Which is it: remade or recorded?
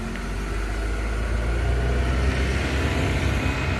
recorded